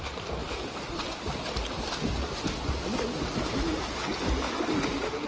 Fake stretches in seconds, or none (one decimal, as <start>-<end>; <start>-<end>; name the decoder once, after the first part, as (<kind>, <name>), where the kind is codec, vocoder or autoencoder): none